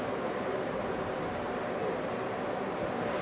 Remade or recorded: remade